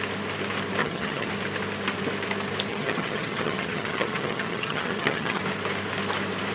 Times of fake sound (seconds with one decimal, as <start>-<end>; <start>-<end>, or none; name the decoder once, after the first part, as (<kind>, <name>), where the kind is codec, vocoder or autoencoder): 0.8-1.3 (vocoder, HiFi-GAN); 2.7-5.4